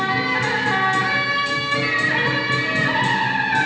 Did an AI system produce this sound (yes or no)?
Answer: no